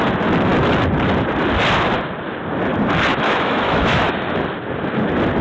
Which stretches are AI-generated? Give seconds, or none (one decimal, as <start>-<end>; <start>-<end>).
3.1-4.4